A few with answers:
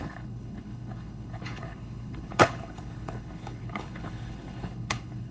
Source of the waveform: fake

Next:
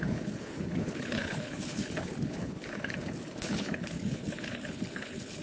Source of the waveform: fake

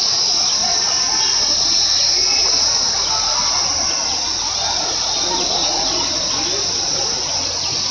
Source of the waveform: real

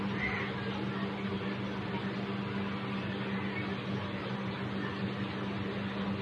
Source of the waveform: real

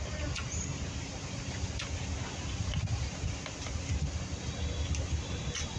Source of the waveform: real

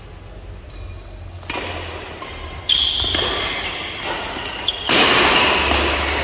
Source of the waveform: real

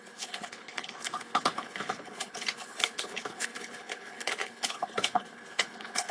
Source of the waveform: fake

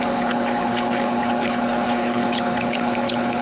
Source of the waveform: fake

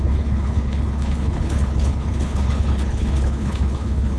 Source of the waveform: fake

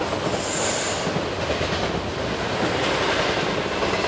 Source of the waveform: real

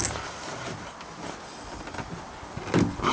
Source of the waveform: real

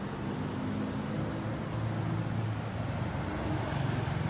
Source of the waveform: real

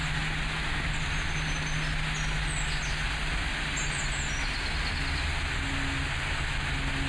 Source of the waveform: real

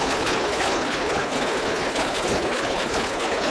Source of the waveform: fake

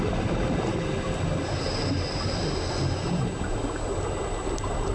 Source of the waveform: real